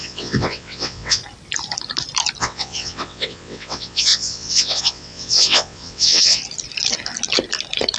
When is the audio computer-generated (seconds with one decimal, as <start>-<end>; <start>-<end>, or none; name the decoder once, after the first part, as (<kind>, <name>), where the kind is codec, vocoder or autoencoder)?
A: 0.0-1.2 (vocoder, WaveNeXt); 2.4-6.4